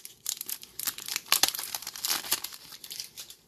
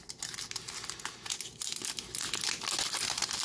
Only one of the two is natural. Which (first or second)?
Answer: second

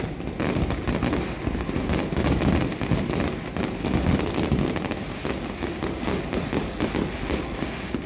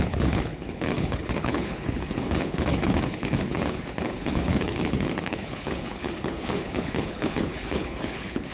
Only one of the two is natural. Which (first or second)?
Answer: first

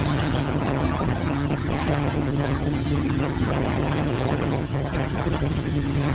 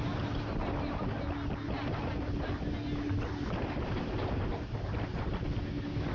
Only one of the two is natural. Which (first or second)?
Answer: second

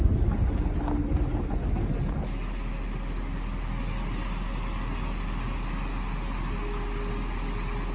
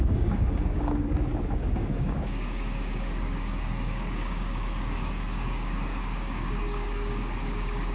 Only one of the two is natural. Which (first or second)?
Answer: first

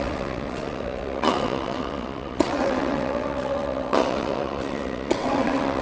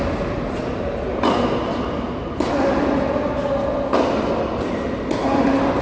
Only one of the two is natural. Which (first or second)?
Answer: second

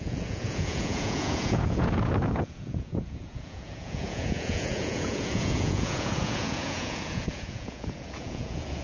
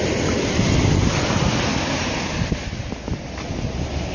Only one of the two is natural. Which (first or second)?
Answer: second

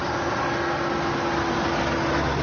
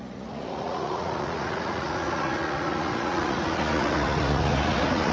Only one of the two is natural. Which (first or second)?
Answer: first